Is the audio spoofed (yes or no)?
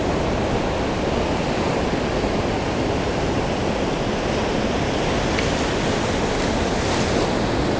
no